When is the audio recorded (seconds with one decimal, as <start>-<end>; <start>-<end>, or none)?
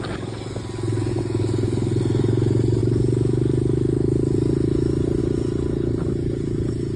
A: 0.0-7.0